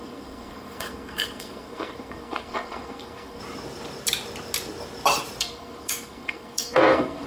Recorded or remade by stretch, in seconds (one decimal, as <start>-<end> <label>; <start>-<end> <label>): 0.0-3.4 remade; 3.4-5.4 recorded; 5.4-7.3 remade

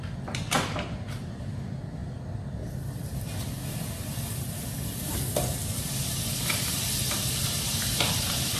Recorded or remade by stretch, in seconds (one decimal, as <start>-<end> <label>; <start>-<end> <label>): 0.0-8.6 recorded

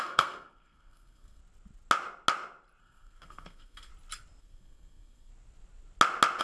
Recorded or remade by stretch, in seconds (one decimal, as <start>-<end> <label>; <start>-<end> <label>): 0.0-1.4 remade; 1.4-2.8 recorded; 2.8-3.9 remade; 3.9-4.4 recorded; 4.4-5.3 remade; 5.3-6.4 recorded

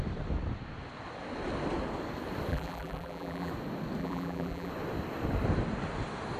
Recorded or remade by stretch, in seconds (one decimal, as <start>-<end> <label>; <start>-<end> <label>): 0.0-2.5 recorded; 2.5-3.5 remade; 3.5-4.0 recorded; 4.0-4.7 remade; 4.7-6.4 recorded

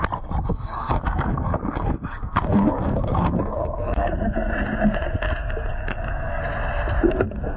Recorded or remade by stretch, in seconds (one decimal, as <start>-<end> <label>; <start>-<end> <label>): 0.0-0.5 recorded; 0.5-4.5 remade; 4.5-5.7 recorded; 5.7-6.4 remade; 6.4-7.6 recorded

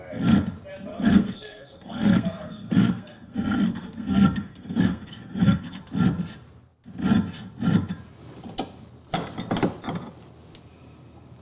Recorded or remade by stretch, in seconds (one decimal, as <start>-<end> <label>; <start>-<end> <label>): 0.0-0.9 recorded; 0.9-5.8 remade; 5.8-11.4 recorded

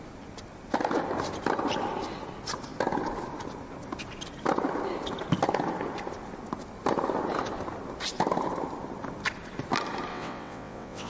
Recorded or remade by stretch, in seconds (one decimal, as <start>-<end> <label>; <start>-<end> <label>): 0.0-10.1 recorded; 10.1-11.1 remade